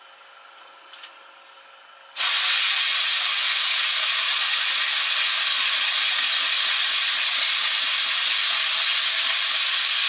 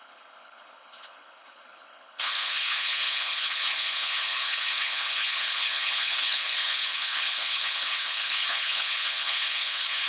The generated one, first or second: second